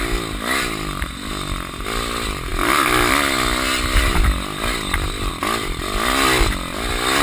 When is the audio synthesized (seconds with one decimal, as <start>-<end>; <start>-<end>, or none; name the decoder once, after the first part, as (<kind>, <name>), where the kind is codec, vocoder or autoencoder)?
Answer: none